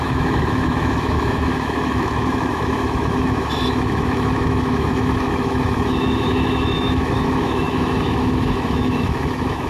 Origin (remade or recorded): remade